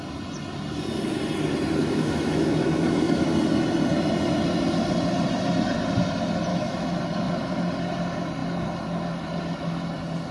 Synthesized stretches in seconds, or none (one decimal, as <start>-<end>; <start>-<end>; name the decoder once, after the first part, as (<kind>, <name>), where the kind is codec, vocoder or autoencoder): 1.8-3.3 (autoencoder, DAC-VAE); 6.5-7.0